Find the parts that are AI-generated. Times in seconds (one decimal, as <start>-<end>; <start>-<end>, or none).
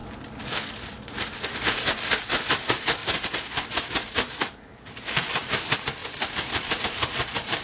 2.5-3.0; 3.8-7.6